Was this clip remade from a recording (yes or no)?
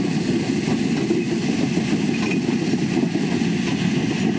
no